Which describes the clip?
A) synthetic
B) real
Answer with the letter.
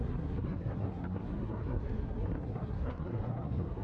A